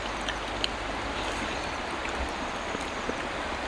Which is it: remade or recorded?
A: recorded